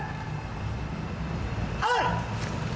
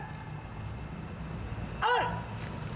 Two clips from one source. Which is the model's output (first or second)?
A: first